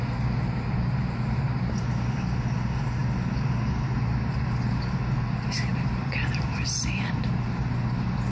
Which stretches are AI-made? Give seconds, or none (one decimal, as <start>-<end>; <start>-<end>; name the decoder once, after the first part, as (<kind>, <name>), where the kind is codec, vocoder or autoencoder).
5.7-7.2 (vocoder, BigVGAN v2)